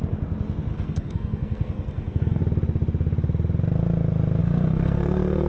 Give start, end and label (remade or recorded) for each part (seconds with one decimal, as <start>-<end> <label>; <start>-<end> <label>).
0.0-0.7 recorded; 0.7-2.4 remade; 2.4-4.4 recorded; 4.4-5.5 remade